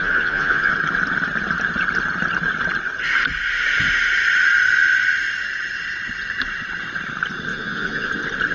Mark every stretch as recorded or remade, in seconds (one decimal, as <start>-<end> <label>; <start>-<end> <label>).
0.0-0.7 remade; 0.7-7.5 recorded; 7.5-8.1 remade; 8.1-8.5 recorded